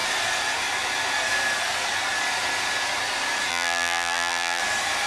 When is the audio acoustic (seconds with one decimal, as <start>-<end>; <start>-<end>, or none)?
0.0-3.5; 4.6-5.1